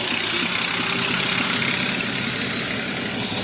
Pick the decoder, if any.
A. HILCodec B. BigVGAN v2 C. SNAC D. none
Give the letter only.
D